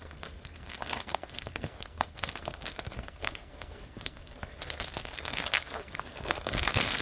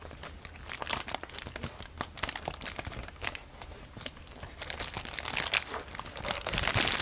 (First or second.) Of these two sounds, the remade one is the first